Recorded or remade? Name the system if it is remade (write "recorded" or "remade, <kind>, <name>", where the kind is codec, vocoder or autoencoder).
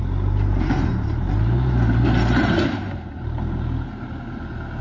recorded